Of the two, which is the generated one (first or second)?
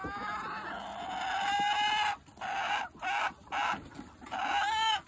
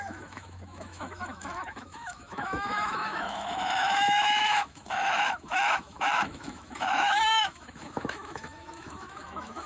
second